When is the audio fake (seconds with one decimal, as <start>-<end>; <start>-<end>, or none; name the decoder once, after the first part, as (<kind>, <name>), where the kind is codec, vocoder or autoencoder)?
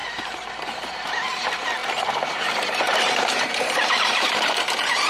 0.0-5.1 (vocoder, BigVGAN v2)